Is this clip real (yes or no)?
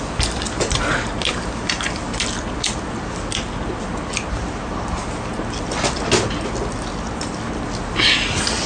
yes